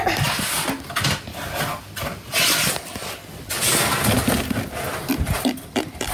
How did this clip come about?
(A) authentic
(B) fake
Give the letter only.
A